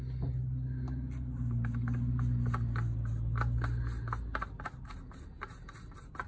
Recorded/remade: recorded